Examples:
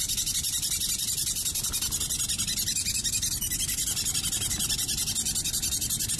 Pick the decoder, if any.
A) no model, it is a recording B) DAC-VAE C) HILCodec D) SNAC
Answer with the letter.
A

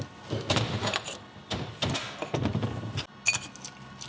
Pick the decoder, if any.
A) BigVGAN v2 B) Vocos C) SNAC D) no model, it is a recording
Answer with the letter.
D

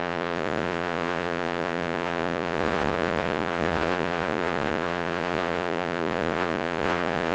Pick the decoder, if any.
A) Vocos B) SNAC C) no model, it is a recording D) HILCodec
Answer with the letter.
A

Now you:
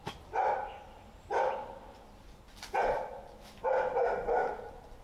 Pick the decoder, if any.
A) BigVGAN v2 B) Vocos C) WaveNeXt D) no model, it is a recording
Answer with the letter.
D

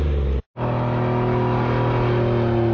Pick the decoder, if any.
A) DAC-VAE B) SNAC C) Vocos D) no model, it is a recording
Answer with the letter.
D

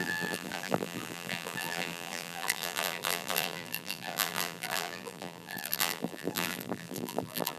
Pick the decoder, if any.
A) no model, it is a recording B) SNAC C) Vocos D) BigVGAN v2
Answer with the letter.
D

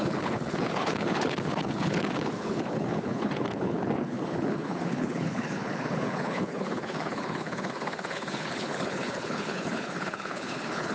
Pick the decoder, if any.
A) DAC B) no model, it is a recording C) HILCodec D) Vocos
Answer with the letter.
C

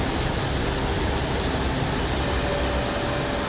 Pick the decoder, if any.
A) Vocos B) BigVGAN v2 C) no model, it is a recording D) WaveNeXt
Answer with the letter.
C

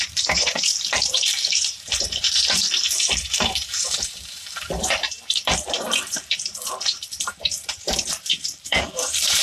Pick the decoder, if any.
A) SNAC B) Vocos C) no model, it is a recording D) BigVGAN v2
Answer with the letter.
D